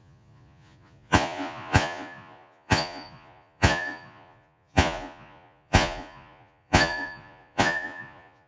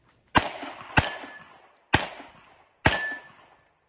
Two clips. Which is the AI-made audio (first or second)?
first